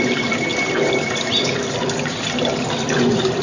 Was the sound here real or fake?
fake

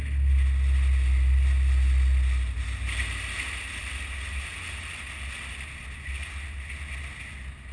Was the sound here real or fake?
real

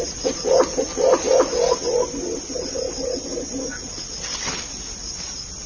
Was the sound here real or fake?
real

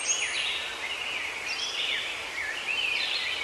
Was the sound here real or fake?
real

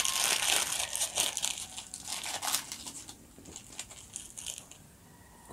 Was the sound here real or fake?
real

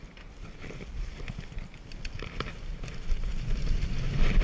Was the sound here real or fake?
fake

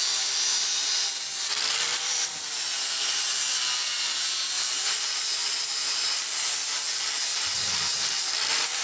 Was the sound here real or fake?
fake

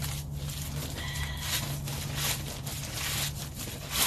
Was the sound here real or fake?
real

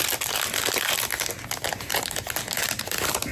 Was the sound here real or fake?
real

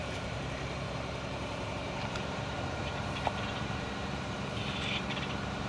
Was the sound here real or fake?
fake